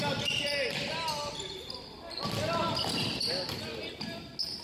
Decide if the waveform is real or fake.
real